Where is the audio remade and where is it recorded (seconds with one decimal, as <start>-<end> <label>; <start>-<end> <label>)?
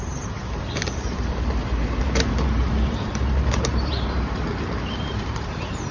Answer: 0.0-4.4 remade; 4.4-5.1 recorded; 5.1-5.9 remade